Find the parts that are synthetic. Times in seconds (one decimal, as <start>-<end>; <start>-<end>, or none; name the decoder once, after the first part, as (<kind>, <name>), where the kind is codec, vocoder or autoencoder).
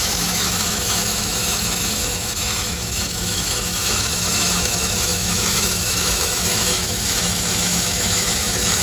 0.0-8.8 (autoencoder, DAC-VAE)